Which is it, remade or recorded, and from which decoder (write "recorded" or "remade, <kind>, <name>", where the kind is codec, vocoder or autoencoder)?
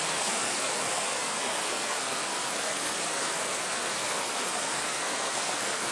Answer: remade, codec, SNAC